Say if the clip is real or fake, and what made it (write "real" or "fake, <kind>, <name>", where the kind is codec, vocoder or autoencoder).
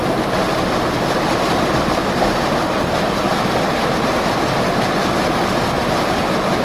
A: real